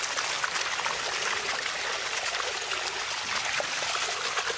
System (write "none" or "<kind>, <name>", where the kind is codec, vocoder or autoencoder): none